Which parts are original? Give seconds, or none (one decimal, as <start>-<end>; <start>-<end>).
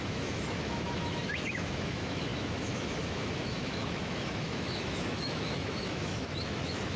none